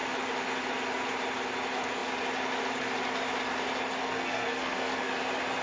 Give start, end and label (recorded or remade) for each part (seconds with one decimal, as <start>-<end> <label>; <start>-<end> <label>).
0.0-4.0 recorded; 4.0-5.1 remade; 5.1-5.6 recorded